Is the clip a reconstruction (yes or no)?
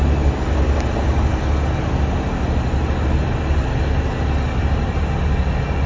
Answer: no